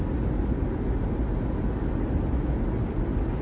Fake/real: real